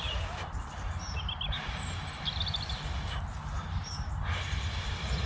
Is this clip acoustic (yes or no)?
yes